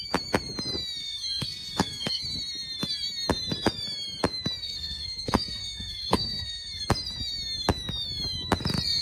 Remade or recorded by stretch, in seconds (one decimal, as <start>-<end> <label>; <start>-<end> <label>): 0.0-1.0 recorded; 1.0-2.2 remade; 2.2-4.6 recorded; 4.6-6.8 remade; 6.8-9.0 recorded